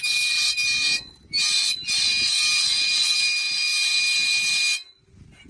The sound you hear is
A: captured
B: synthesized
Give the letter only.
A